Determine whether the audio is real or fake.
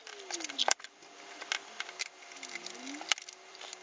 real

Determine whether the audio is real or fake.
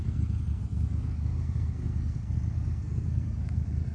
fake